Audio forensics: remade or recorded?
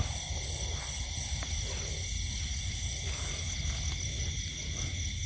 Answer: recorded